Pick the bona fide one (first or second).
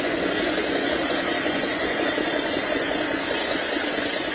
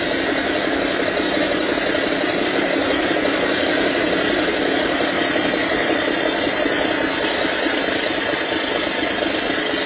second